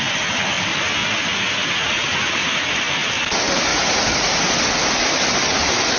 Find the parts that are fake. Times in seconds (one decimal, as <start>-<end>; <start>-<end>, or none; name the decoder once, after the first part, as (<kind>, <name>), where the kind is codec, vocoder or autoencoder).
1.0-2.8 (vocoder, Vocos); 3.7-4.4